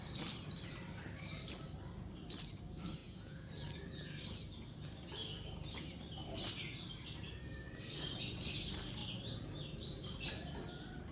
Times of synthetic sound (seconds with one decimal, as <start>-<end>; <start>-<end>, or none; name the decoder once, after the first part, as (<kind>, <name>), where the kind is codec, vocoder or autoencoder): 3.0-3.5 (vocoder, Vocos)

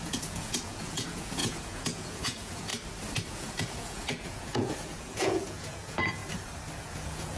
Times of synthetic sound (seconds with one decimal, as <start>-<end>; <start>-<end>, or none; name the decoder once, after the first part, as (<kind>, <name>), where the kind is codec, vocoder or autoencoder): 0.0-2.7 (vocoder, Vocos); 3.3-6.2; 6.8-7.4

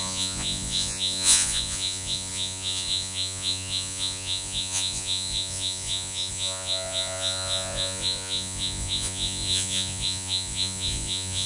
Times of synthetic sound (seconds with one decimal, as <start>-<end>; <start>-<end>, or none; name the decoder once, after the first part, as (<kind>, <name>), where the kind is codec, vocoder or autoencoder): 0.0-11.5 (vocoder, Vocos)